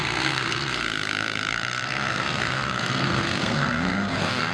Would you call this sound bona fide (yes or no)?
no